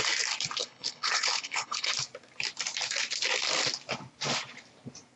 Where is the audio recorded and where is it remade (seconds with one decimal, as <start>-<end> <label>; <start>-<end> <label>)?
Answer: 0.0-0.6 recorded; 0.6-1.9 remade; 1.9-5.2 recorded